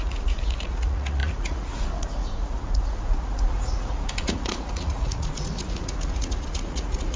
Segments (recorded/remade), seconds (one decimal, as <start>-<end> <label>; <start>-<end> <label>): 0.0-7.2 remade